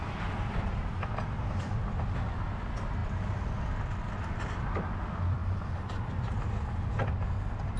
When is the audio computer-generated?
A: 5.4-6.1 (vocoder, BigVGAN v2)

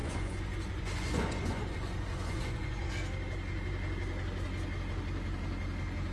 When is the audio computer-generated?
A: 0.0-2.9 (vocoder, Vocos)